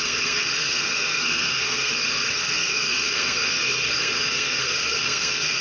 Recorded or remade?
remade